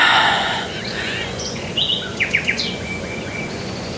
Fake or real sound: fake